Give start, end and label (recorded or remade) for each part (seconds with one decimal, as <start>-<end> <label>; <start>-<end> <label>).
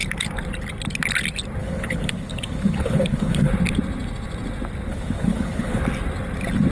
0.0-1.6 recorded; 1.6-3.5 remade; 3.5-4.9 recorded; 4.9-5.8 remade; 5.8-6.7 recorded